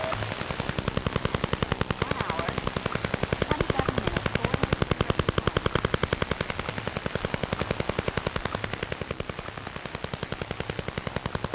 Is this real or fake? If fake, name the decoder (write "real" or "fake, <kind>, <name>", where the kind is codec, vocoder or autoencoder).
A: real